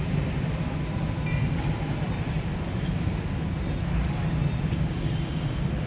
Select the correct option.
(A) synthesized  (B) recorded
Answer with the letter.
B